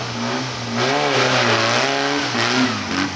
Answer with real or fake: real